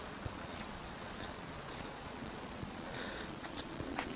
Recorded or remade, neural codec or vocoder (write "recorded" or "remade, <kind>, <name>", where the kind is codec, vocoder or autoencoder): remade, vocoder, Vocos